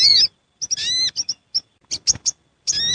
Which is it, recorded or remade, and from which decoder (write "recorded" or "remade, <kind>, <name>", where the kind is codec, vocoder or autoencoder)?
recorded